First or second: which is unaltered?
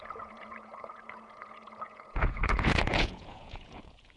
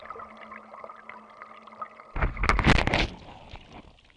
second